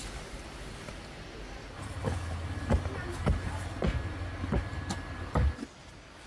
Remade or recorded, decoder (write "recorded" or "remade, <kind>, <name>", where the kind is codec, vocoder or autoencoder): recorded